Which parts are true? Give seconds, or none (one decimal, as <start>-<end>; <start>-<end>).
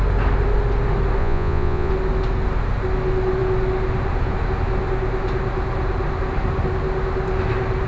0.0-1.2; 1.9-7.9